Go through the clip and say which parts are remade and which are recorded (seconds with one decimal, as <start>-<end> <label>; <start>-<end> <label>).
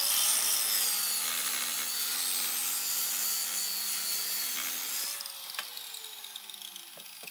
0.0-7.3 recorded